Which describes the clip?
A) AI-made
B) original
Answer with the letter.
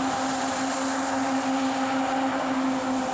B